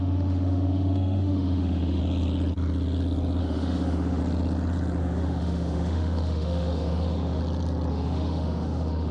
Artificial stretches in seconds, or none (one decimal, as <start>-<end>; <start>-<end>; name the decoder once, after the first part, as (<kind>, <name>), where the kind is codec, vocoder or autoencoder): 0.0-2.0 (autoencoder, DAC-VAE); 3.4-4.2; 5.0-7.4; 7.9-9.1